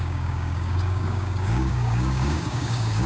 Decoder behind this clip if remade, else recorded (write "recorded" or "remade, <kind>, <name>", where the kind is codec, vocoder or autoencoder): remade, codec, DAC